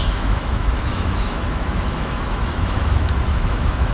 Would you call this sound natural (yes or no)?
no